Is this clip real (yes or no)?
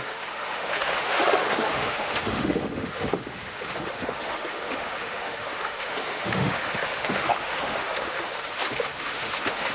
no